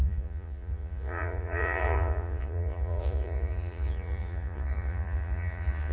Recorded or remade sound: remade